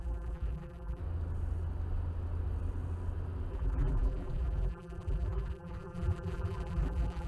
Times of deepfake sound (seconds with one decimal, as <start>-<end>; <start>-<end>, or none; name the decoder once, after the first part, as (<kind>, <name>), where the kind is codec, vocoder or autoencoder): 0.0-1.0 (vocoder, BigVGAN v2); 3.5-7.3